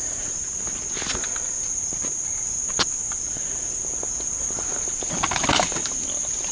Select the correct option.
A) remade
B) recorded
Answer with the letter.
B